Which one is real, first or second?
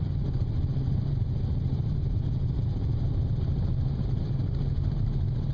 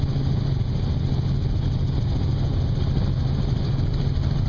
second